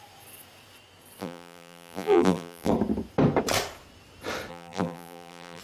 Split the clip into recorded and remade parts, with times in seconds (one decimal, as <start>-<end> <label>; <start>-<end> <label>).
0.0-1.2 recorded; 1.2-2.7 remade; 2.7-4.5 recorded; 4.5-5.6 remade